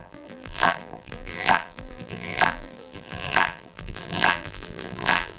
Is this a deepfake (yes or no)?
yes